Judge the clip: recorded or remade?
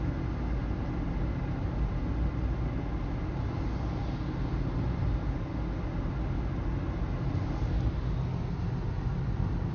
recorded